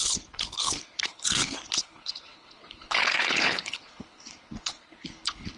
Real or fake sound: fake